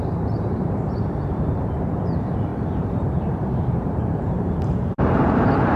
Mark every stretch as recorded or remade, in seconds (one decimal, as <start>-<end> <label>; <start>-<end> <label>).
0.0-5.8 remade